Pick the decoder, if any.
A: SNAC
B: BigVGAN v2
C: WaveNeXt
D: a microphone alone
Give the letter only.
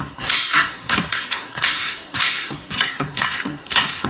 A